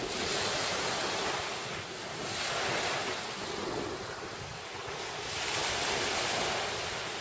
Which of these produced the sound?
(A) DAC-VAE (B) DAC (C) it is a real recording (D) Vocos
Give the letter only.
C